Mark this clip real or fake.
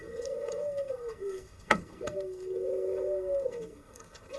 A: fake